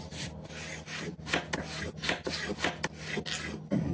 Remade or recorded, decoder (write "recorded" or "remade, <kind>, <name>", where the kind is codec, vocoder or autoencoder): recorded